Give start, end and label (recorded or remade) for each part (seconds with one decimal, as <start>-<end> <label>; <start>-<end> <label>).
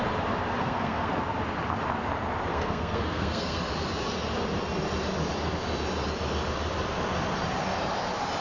0.0-0.6 recorded; 0.6-1.1 remade; 1.1-2.5 recorded; 2.5-3.7 remade; 3.7-8.4 recorded